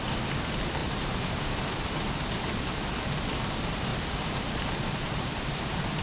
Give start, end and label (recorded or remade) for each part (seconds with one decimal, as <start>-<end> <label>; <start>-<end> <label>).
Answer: 0.0-0.8 recorded; 0.8-1.6 remade; 1.6-3.9 recorded; 3.9-6.0 remade